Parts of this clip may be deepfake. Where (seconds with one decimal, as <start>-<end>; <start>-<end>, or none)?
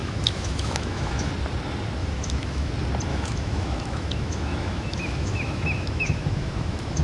0.0-1.3; 2.0-2.7; 3.1-7.0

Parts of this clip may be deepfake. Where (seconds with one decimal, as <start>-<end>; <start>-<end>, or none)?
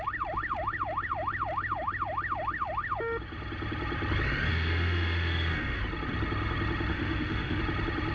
4.5-5.8; 6.9-7.6